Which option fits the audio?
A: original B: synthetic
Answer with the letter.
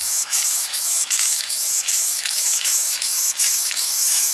B